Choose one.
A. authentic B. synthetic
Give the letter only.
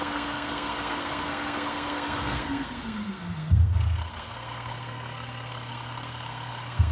B